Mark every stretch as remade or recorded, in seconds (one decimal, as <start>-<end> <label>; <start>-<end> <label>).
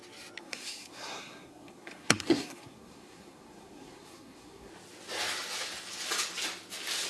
0.0-0.4 recorded; 0.4-4.7 remade; 4.7-7.1 recorded